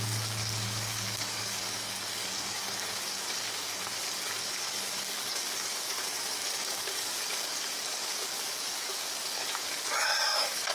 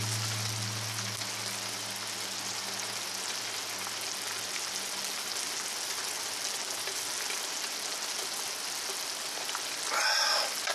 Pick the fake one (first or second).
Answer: first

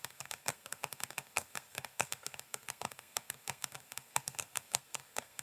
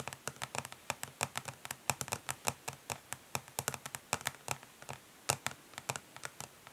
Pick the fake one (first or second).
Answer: first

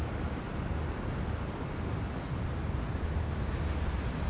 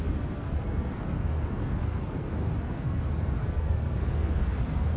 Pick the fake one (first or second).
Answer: second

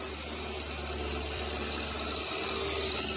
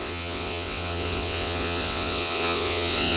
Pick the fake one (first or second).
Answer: second